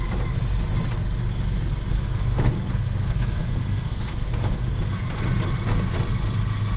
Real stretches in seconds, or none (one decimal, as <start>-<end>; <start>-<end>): 0.0-1.9; 4.7-6.8